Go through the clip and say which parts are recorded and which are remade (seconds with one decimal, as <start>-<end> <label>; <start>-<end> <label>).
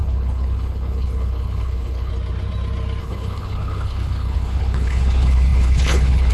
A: 0.0-2.1 remade; 2.1-3.0 recorded; 3.0-6.3 remade